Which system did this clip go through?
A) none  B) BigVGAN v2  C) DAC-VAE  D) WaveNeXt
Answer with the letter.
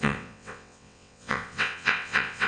D